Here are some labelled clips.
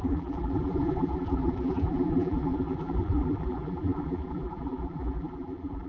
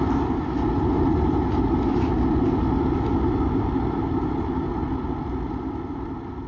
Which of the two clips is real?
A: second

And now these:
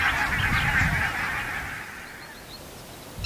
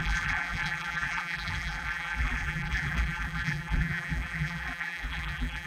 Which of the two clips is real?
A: first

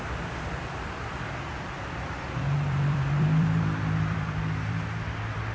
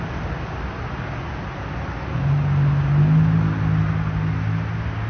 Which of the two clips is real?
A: second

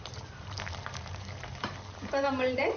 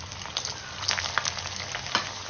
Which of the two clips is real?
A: second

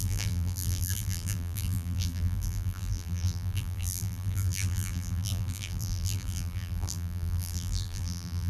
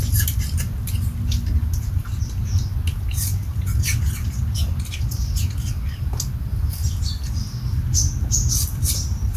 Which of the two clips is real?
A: second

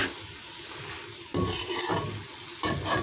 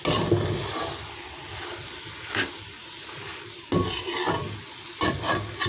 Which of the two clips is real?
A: first